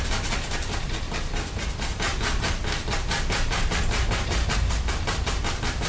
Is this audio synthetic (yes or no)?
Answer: yes